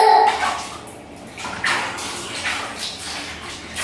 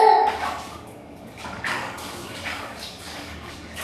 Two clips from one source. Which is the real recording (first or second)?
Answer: first